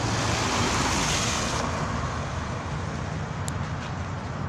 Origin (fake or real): real